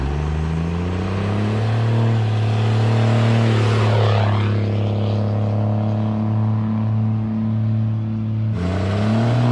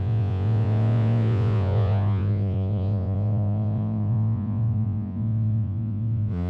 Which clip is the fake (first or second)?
second